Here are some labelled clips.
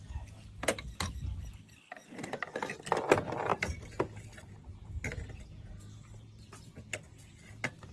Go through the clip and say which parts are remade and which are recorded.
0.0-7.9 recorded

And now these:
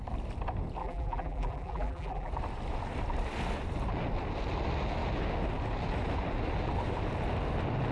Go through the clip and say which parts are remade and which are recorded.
0.0-0.8 recorded; 0.8-2.3 remade; 2.3-7.9 recorded

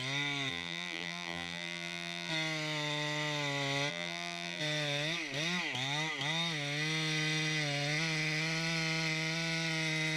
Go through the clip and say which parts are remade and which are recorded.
0.0-0.5 recorded; 0.5-2.3 remade; 2.3-3.9 recorded; 3.9-4.6 remade; 4.6-10.2 recorded

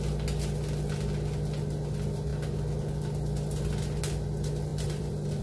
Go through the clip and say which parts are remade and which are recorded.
0.0-4.7 recorded; 4.7-5.4 remade

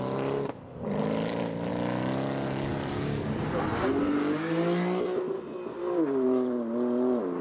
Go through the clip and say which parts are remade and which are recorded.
0.0-1.7 remade; 1.7-2.7 recorded; 2.7-3.7 remade; 3.7-5.8 recorded; 5.8-7.4 remade